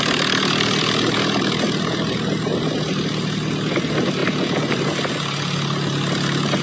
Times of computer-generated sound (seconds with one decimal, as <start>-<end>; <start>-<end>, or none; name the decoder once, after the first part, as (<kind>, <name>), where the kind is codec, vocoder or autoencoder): none